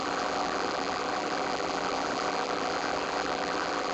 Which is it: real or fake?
fake